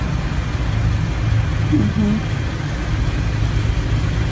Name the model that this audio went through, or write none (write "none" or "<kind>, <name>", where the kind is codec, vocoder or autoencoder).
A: none